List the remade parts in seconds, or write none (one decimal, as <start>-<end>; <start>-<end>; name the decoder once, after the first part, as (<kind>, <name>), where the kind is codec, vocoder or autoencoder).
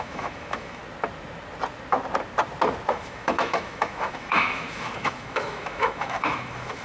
0.0-0.8 (autoencoder, DAC-VAE); 2.9-6.8